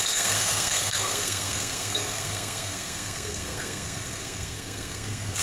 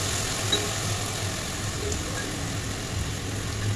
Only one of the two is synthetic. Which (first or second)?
first